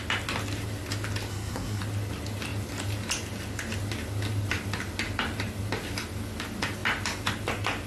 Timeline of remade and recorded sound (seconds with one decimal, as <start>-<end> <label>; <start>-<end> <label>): 0.0-1.3 recorded; 1.3-1.8 remade; 1.8-7.9 recorded